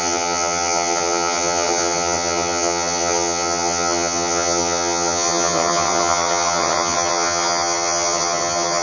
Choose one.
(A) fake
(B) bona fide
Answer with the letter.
A